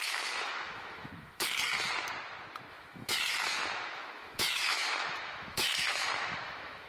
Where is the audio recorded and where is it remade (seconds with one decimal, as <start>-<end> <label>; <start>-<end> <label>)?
0.0-1.6 remade; 1.6-2.7 recorded; 2.7-6.9 remade